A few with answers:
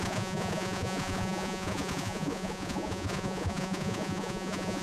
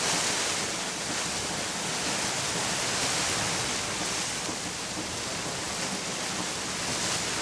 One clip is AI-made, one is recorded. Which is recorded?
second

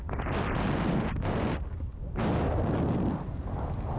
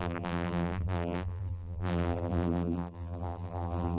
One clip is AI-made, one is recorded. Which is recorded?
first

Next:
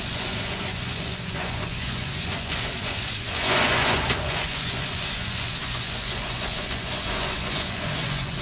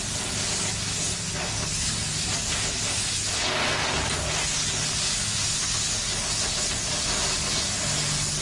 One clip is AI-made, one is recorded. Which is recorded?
second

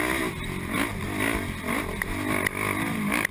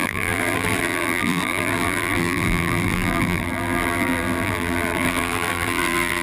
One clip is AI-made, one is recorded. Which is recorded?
first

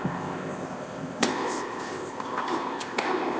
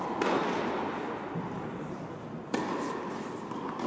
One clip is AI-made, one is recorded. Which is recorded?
second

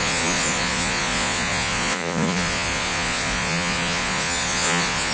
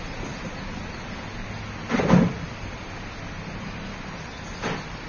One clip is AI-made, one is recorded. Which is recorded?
second